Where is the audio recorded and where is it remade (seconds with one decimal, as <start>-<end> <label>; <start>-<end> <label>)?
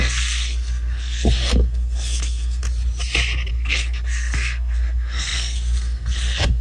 0.0-2.6 remade; 2.6-3.5 recorded; 3.5-6.6 remade